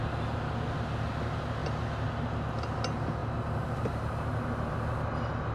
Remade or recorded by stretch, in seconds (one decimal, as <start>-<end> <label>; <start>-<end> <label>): 0.0-5.5 recorded